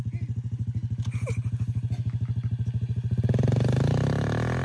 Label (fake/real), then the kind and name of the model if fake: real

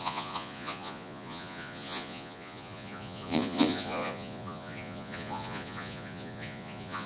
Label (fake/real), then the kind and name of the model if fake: fake, vocoder, Vocos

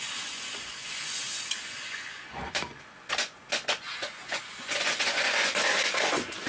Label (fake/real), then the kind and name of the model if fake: fake, vocoder, Vocos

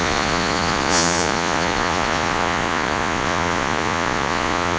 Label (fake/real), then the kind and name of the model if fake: fake, vocoder, Vocos